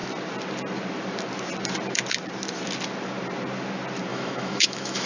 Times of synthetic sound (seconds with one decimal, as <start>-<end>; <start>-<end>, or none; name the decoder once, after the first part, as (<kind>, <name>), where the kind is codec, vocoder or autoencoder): 4.1-5.1 (autoencoder, DAC-VAE)